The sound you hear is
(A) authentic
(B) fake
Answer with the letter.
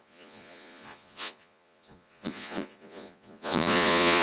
B